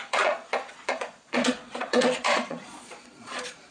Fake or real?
fake